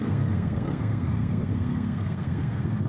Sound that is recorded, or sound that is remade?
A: remade